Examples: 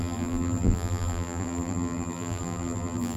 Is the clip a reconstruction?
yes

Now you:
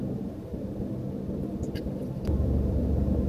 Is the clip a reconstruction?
no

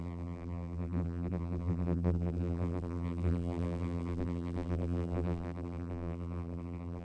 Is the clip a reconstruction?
yes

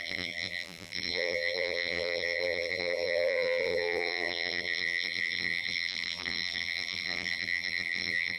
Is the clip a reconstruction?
yes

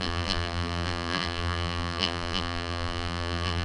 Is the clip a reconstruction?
yes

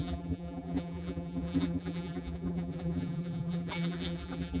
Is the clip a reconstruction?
yes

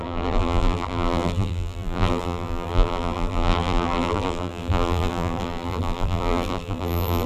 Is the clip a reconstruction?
yes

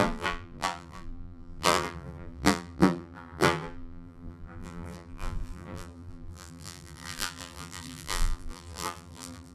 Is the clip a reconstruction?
yes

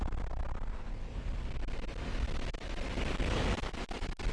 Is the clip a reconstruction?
no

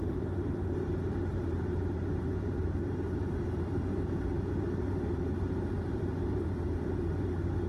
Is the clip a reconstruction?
yes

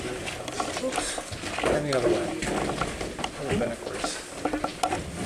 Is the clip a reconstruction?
no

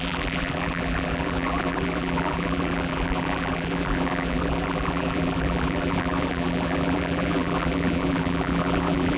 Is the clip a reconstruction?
yes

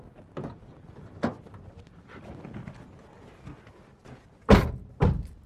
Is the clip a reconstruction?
no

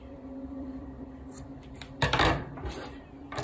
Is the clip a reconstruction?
yes